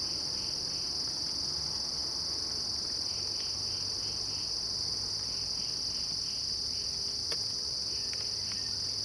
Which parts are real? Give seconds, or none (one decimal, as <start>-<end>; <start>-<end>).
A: 0.0-7.2; 7.8-9.0

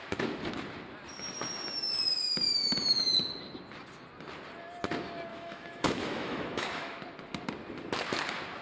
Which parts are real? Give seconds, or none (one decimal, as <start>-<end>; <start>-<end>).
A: 0.0-5.3; 7.0-8.6

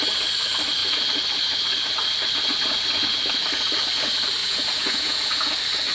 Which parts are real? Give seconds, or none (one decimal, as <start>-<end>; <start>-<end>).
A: 0.0-4.4; 5.5-5.9

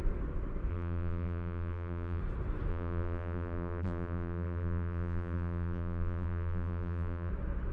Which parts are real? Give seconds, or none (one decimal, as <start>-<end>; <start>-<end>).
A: 0.0-0.7; 2.2-2.7; 7.3-7.7

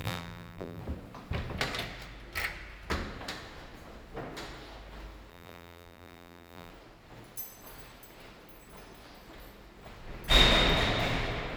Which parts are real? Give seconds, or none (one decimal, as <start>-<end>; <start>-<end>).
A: 0.8-5.3; 6.7-11.6

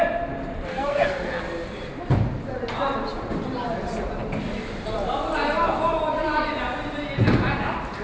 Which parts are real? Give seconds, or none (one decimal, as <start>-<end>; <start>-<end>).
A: 0.0-0.7; 1.4-8.0

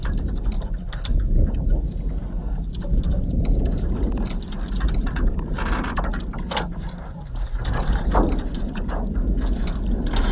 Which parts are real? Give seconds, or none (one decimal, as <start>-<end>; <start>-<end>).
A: 0.0-10.3